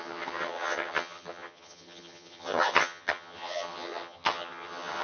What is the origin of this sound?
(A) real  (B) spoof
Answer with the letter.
B